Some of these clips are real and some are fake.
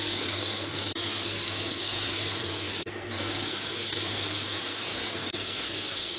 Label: fake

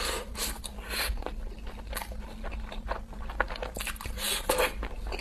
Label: real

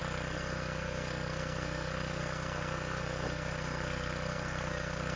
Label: fake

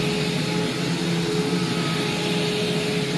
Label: real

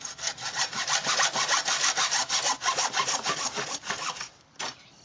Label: real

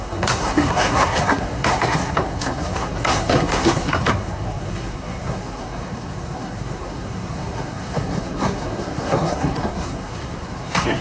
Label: fake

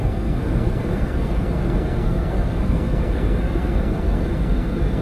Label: fake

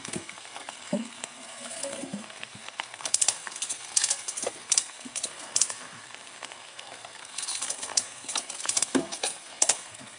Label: fake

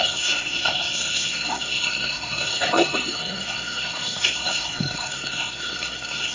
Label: fake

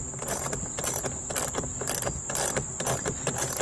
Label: real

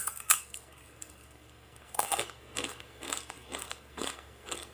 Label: fake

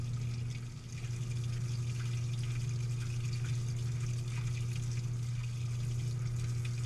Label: real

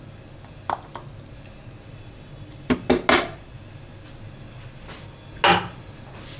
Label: real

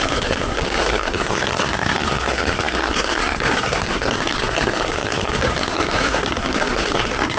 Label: fake